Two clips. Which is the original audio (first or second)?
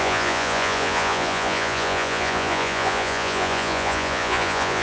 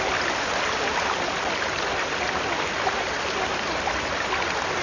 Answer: second